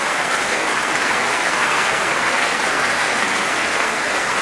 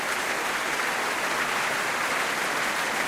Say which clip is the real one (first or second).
second